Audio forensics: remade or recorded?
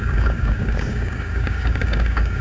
remade